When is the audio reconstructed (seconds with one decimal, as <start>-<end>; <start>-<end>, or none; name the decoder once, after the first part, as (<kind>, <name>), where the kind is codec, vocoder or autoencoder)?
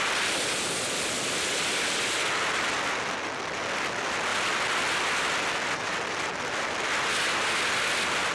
none